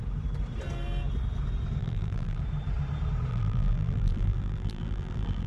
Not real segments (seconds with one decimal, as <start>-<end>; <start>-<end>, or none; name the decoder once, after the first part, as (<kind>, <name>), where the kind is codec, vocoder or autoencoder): 1.8-2.4 (vocoder, BigVGAN v2); 3.3-5.5